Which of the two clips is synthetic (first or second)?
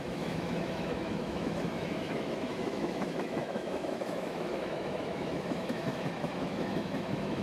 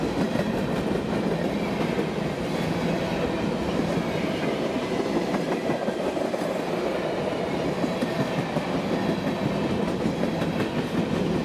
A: first